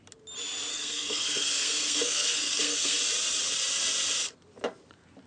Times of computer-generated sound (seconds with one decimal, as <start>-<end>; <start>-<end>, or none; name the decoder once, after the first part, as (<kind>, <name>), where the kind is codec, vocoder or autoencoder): 0.7-3.0 (codec, SNAC)